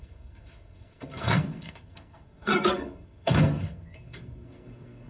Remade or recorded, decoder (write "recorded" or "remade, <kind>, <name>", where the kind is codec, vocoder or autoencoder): remade, codec, SNAC